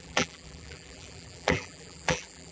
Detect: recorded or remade remade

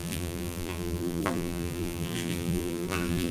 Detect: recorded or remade remade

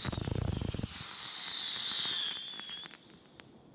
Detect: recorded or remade recorded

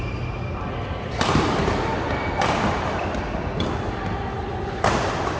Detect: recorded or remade recorded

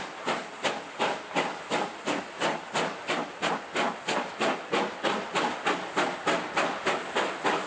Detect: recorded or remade recorded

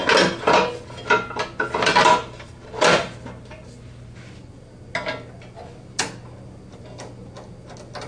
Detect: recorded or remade recorded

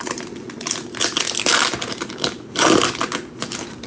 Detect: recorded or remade recorded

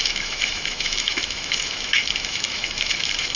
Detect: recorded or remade remade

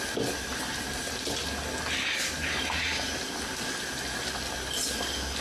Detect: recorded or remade recorded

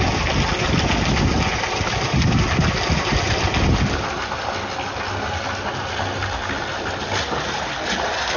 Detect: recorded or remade recorded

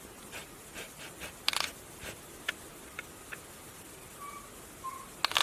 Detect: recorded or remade recorded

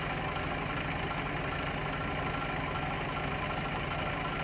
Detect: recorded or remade recorded